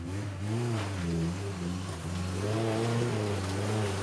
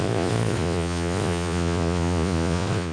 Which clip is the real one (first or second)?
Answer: first